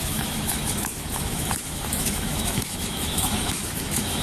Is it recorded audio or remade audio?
remade